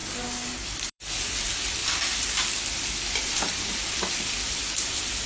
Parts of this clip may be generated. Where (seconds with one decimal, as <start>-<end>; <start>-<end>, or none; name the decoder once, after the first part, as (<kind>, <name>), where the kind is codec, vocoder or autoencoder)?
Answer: 0.0-1.0 (codec, DAC)